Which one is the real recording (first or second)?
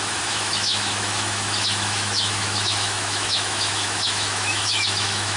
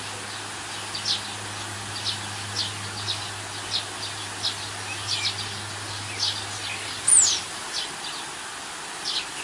second